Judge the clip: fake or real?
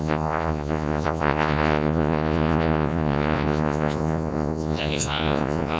fake